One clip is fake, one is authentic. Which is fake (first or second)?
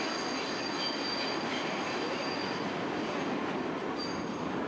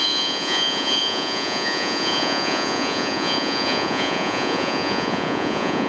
second